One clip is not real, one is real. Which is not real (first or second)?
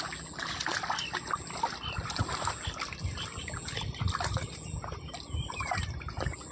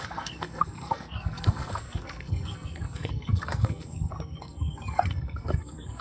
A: second